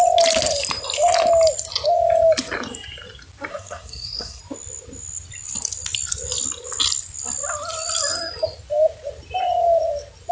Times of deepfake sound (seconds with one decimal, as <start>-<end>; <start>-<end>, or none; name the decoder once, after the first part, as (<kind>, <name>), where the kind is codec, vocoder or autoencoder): 3.5-4.4 (codec, SNAC)